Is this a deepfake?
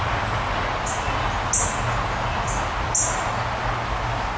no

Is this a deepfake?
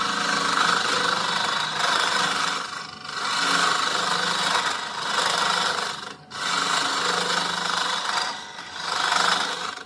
no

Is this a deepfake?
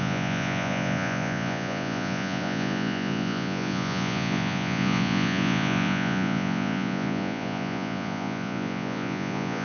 yes